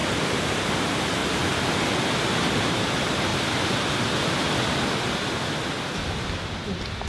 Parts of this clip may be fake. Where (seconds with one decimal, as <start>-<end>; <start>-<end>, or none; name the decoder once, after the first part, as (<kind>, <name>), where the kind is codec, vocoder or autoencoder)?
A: 0.0-1.2 (vocoder, BigVGAN v2); 2.3-3.3

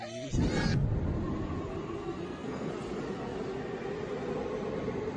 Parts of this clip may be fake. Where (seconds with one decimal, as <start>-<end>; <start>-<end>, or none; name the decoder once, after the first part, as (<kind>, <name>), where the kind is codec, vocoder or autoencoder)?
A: 2.0-2.7 (codec, SNAC)